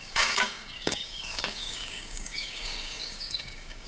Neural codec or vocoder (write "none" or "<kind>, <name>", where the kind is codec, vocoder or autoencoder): codec, DAC